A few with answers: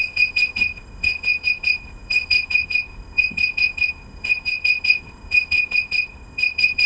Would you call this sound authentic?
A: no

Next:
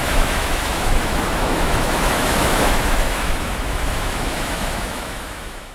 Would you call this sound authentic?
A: no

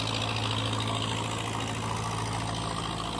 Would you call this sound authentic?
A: yes